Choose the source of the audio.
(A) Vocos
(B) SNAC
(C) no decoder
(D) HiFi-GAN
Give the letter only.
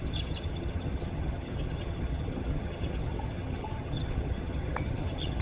D